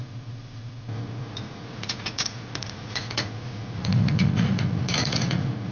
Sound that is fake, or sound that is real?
fake